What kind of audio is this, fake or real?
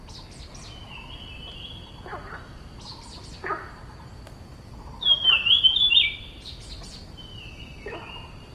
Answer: real